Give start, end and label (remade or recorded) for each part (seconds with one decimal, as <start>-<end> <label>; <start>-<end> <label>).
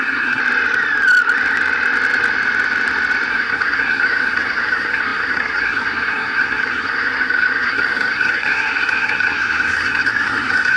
0.0-0.4 remade; 0.4-3.3 recorded; 3.3-10.8 remade